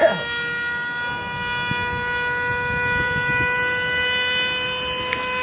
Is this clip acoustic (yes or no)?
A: yes